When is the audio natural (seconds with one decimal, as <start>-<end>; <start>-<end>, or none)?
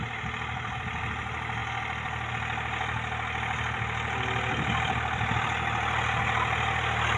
0.0-7.2